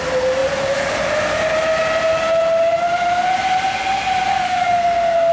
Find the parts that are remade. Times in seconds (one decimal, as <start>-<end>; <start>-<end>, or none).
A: 4.3-5.3